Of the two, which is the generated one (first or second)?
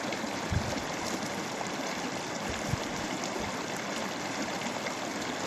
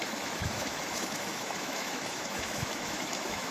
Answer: second